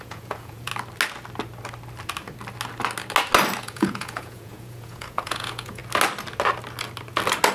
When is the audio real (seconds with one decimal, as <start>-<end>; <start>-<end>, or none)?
0.7-3.6; 5.8-7.5